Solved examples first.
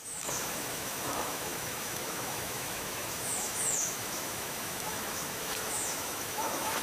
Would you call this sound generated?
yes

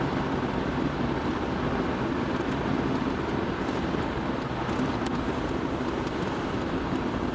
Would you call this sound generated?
no